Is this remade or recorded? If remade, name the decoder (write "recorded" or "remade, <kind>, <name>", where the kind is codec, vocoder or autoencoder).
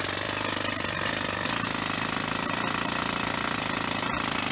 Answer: recorded